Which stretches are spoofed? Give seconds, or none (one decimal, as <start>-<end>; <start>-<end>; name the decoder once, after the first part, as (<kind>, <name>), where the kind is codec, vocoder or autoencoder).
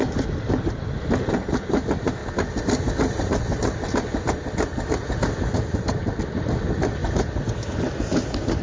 none